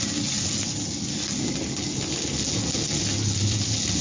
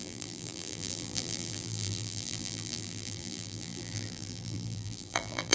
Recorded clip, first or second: first